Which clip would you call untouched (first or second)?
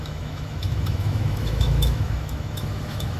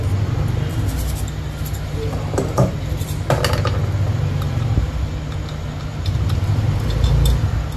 second